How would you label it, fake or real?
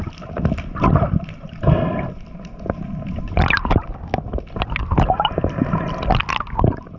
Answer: real